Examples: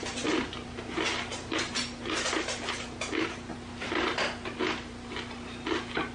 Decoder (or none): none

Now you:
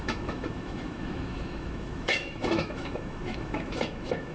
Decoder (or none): autoencoder, DAC-VAE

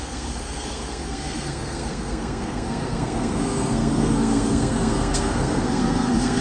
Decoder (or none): codec, SNAC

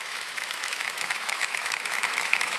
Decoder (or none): autoencoder, DAC-VAE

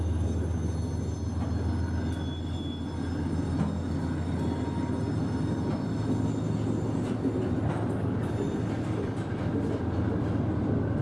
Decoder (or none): none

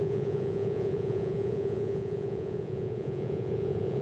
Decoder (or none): vocoder, Vocos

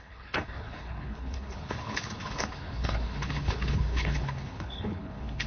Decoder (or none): codec, HILCodec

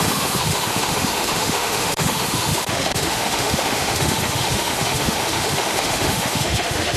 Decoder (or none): autoencoder, DAC-VAE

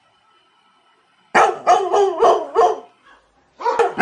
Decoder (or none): none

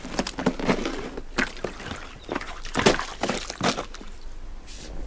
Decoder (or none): none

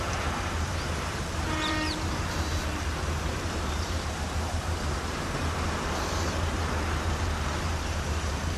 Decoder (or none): vocoder, BigVGAN v2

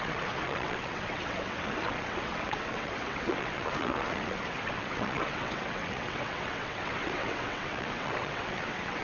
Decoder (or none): vocoder, WaveNeXt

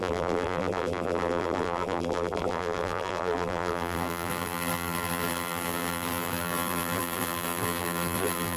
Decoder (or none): vocoder, BigVGAN v2